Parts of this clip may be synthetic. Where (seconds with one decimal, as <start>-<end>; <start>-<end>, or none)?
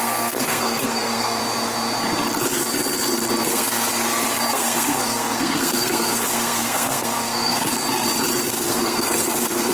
0.0-1.4; 3.5-3.9; 4.5-7.7; 8.5-9.7